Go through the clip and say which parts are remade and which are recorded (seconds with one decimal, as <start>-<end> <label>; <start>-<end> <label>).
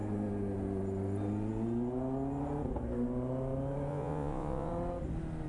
0.0-3.9 recorded; 3.9-4.7 remade; 4.7-5.5 recorded